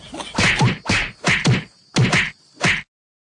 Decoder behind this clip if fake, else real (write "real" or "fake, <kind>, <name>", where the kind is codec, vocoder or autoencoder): real